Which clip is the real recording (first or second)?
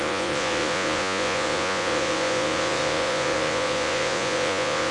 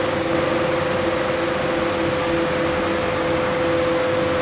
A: second